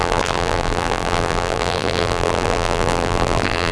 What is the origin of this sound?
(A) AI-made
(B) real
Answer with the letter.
A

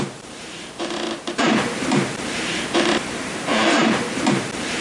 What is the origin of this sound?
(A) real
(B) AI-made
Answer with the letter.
B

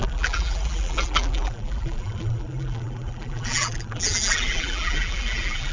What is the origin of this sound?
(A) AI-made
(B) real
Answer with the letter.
A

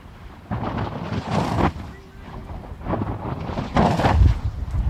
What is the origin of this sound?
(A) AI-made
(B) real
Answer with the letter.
A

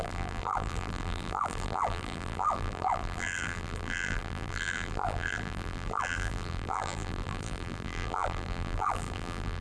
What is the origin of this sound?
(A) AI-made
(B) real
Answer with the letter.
A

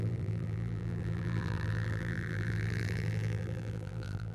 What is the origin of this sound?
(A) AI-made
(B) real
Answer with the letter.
A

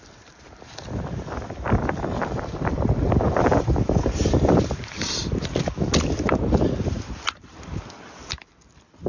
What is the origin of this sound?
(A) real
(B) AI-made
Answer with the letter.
B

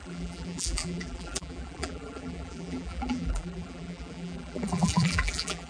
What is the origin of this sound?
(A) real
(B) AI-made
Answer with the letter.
B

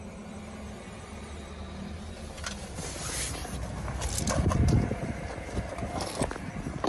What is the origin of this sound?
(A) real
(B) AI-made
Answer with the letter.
A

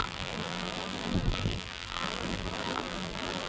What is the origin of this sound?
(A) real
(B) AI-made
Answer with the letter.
B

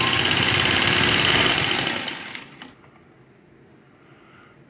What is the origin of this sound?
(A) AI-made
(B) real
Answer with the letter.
A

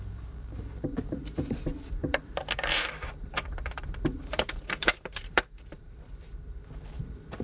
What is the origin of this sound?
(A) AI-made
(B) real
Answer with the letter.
A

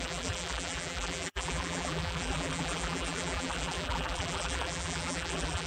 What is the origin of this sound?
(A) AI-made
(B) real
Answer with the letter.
A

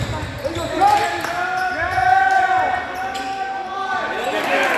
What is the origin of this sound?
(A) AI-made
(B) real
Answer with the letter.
B